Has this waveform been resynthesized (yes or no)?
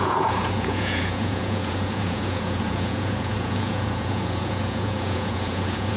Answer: yes